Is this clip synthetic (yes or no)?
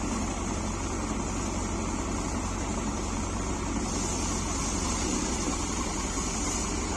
no